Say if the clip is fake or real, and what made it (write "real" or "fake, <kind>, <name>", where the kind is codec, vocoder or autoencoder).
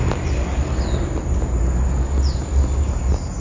real